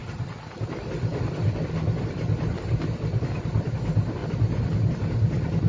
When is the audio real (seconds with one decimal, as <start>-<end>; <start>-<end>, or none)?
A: 0.6-1.1; 3.8-5.7